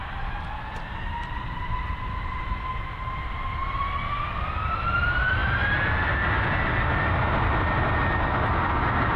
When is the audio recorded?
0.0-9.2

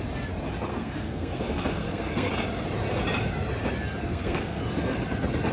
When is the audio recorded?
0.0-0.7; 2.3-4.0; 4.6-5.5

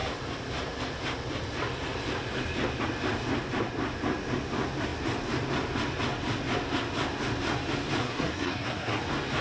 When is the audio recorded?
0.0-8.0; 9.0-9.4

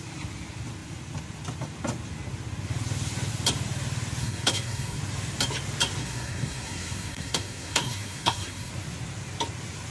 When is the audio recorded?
0.0-4.2; 5.0-6.0; 8.7-9.9